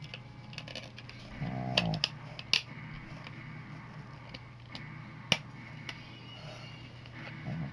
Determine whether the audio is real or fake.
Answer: real